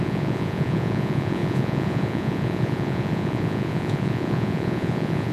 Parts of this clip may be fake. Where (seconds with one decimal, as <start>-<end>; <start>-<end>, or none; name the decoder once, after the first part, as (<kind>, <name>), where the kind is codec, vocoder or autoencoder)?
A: 0.0-5.3 (vocoder, Vocos)